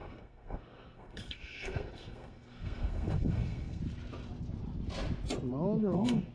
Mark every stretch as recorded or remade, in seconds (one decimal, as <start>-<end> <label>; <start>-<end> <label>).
0.0-3.8 remade; 3.8-5.8 recorded; 5.8-6.3 remade